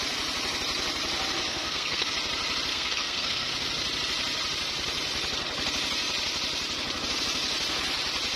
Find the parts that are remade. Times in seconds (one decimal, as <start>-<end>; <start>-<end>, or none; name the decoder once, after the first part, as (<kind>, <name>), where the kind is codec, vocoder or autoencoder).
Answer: 1.5-2.1 (codec, SNAC); 2.7-3.5